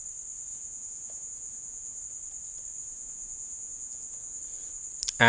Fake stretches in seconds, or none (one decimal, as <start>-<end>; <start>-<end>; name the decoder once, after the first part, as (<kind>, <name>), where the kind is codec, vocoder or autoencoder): 0.5-2.0 (vocoder, Vocos); 2.8-4.4